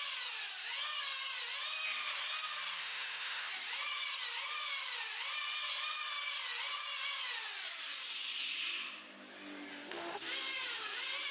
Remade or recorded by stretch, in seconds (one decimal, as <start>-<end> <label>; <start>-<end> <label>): 0.0-2.8 recorded; 2.8-3.5 remade; 3.5-9.7 recorded; 9.7-10.2 remade; 10.2-11.3 recorded